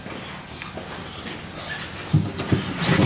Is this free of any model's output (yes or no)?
yes